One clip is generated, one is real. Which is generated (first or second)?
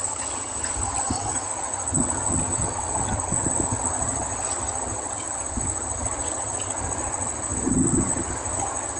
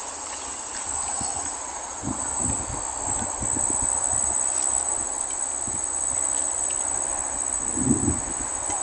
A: first